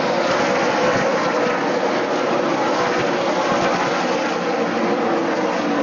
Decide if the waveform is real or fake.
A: real